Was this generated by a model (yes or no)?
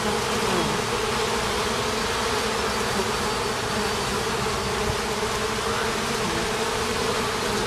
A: no